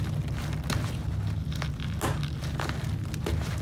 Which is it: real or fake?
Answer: real